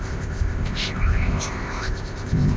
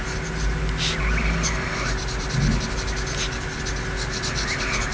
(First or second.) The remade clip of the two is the first